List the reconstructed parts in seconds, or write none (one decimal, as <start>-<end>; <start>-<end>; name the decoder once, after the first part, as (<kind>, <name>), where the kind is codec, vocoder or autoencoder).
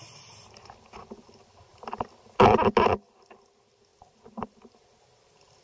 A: none